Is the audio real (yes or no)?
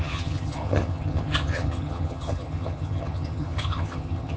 no